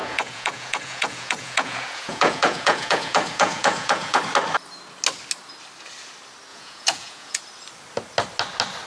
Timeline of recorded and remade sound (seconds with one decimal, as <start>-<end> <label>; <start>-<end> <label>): 0.0-4.2 remade; 4.2-6.5 recorded; 6.5-7.4 remade; 7.4-8.9 recorded